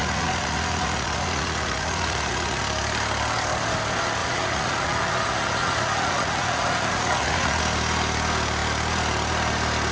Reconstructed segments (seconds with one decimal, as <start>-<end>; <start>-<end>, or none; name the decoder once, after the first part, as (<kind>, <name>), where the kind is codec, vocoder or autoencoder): 0.0-2.6 (vocoder, Vocos); 4.2-7.6